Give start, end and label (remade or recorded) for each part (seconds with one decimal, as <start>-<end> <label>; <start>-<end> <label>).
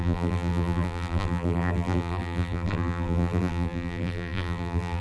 0.0-5.0 remade